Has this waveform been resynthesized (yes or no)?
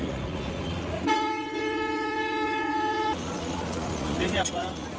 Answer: yes